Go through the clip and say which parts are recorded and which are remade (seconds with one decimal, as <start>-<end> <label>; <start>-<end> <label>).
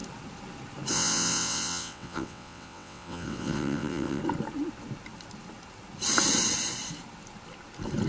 0.0-0.9 recorded; 0.9-4.2 remade; 4.2-8.1 recorded